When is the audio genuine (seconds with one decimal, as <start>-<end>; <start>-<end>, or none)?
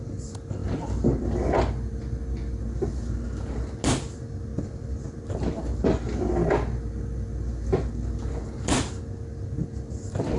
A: 0.0-10.4